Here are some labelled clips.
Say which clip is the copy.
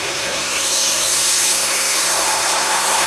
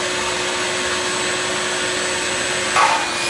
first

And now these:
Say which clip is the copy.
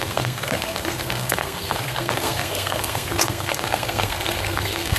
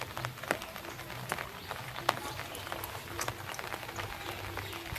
first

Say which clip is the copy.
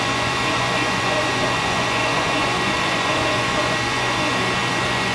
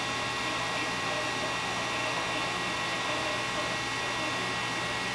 first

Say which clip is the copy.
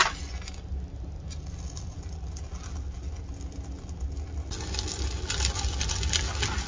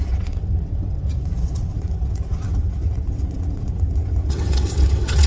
second